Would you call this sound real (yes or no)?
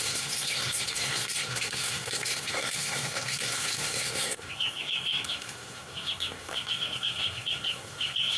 no